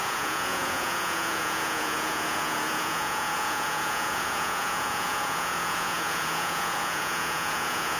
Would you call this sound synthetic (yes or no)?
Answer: yes